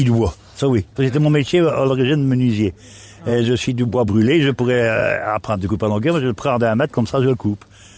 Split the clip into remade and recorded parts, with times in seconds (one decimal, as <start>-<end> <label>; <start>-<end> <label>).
0.0-0.4 recorded; 0.4-1.7 remade; 1.7-3.3 recorded; 3.3-4.6 remade; 4.6-5.0 recorded; 5.0-5.7 remade; 5.7-8.0 recorded